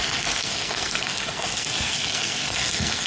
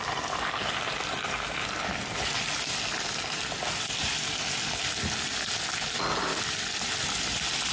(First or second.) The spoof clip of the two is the first